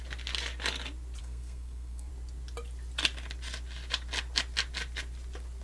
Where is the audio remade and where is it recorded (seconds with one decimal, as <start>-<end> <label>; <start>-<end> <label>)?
0.0-1.2 recorded; 1.2-2.1 remade; 2.1-5.6 recorded